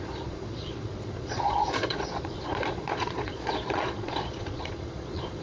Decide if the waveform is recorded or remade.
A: remade